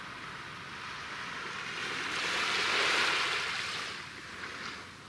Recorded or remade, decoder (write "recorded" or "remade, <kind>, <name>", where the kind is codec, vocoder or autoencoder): recorded